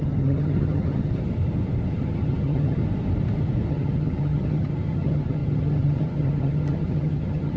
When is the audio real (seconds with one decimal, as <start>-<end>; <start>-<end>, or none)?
1.2-1.9; 2.8-3.7